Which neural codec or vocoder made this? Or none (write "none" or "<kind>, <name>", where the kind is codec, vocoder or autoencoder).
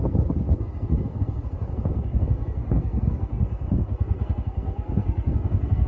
codec, SNAC